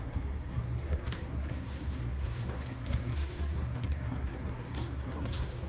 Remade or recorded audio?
remade